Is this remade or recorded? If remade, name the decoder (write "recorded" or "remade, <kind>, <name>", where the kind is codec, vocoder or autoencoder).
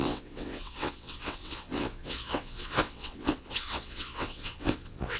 remade, vocoder, WaveNeXt